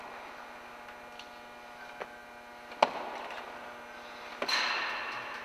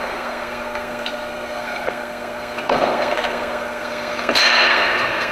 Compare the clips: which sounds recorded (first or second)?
first